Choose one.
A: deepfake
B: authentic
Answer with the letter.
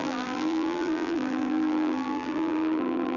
A